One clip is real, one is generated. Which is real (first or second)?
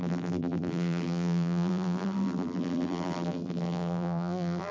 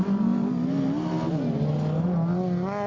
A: second